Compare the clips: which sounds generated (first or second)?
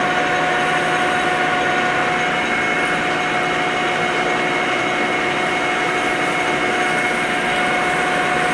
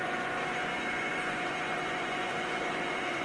second